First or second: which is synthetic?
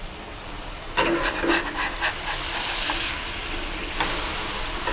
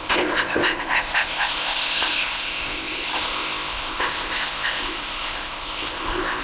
second